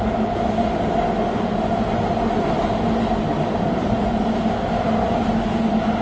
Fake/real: real